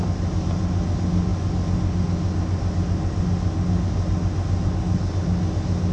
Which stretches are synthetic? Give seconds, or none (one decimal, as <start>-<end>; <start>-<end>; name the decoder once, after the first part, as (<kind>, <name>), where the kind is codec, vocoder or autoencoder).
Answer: none